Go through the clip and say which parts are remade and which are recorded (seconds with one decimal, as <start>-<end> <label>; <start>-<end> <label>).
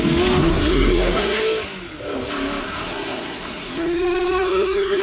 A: 0.0-0.4 recorded; 0.4-1.4 remade; 1.4-2.6 recorded; 2.6-5.0 remade